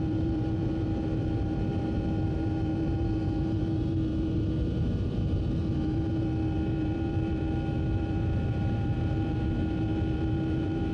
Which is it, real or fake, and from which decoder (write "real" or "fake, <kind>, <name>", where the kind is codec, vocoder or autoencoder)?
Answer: fake, vocoder, BigVGAN v2